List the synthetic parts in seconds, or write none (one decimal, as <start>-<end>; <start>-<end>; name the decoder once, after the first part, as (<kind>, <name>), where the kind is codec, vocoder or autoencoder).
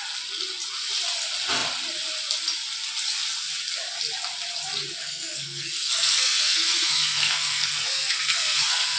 5.0-9.0 (codec, SNAC)